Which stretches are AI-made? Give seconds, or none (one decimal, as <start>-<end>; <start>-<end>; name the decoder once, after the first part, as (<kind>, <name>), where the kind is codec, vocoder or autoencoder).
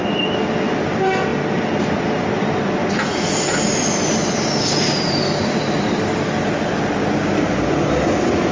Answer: none